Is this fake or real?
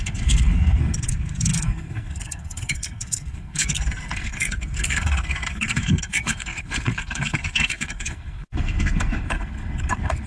fake